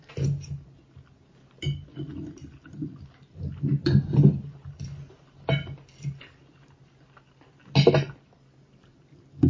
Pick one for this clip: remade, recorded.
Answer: recorded